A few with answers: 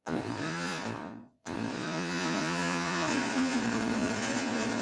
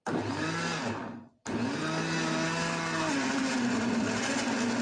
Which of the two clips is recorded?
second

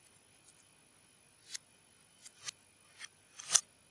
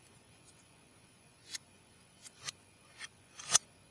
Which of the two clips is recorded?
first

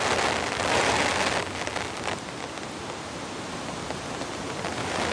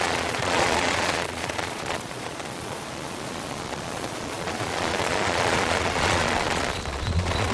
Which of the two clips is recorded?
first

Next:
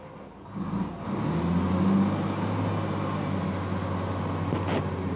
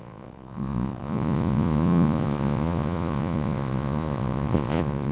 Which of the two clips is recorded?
first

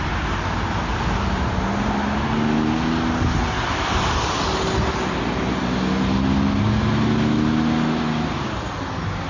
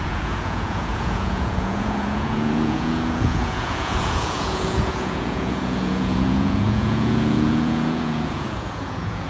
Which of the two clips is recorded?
first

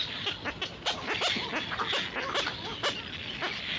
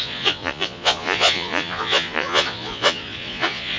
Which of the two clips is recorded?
first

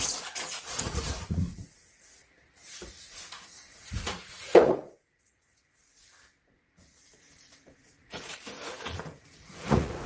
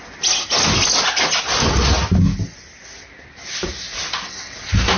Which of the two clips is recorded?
second